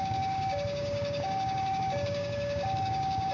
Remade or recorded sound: remade